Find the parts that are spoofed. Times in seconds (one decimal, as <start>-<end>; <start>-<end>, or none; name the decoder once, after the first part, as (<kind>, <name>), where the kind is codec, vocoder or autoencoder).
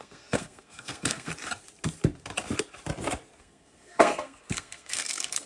0.0-1.3 (codec, SNAC); 3.4-5.5